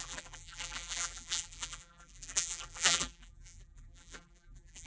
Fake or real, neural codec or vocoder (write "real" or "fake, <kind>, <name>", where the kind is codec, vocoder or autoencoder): fake, vocoder, BigVGAN v2